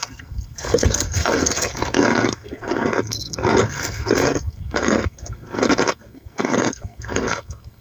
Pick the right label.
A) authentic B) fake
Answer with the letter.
B